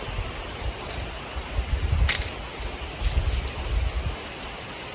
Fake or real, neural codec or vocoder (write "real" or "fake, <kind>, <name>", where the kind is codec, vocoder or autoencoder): real